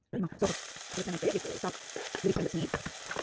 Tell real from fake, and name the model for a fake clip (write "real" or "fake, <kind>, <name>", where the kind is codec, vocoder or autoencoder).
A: real